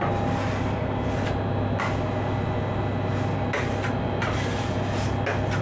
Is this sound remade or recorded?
recorded